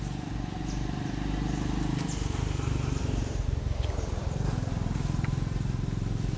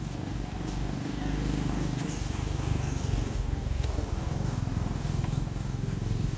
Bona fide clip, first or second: first